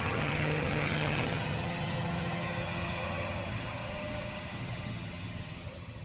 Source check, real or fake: fake